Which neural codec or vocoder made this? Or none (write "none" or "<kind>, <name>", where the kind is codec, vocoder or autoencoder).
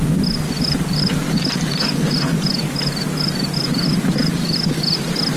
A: none